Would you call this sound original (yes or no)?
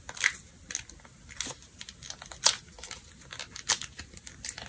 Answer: yes